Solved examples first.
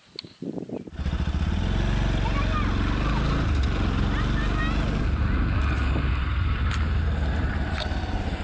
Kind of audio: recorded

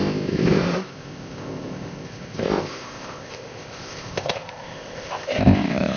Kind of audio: remade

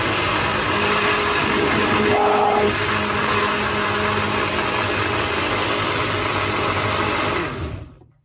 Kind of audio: recorded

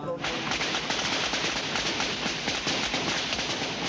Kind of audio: recorded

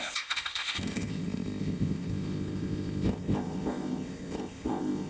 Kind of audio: remade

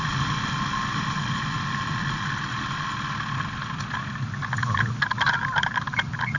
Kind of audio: recorded